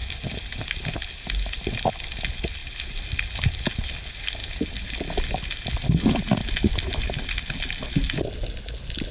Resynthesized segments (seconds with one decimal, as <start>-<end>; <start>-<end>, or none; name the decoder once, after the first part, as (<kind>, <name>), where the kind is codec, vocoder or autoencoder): none